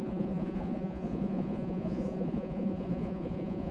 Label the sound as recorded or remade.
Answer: remade